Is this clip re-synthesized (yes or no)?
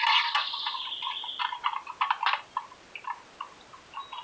no